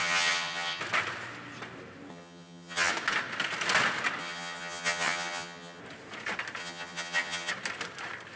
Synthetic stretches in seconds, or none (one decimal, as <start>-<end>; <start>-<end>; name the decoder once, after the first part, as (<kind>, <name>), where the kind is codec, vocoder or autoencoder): 0.0-0.8 (vocoder, HiFi-GAN); 2.1-2.9; 4.2-5.8; 6.6-7.5